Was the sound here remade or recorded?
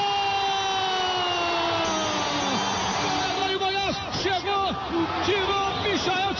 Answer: recorded